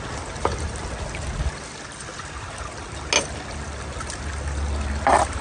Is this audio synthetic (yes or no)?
no